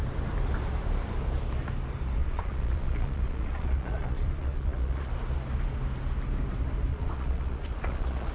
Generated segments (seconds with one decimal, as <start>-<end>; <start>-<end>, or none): 2.2-5.1; 6.9-8.3